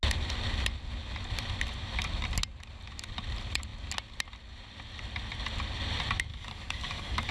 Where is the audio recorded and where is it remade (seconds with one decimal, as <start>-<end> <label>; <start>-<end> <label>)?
0.0-6.3 recorded; 6.3-7.3 remade